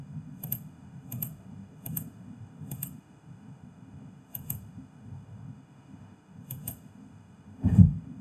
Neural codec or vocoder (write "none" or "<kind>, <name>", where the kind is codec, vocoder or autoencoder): autoencoder, DAC-VAE